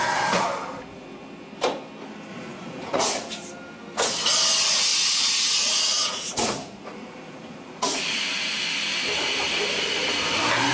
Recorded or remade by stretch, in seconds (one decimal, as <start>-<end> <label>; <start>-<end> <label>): 0.0-2.3 recorded; 2.3-3.0 remade; 3.0-4.9 recorded; 4.9-8.2 remade; 8.2-10.7 recorded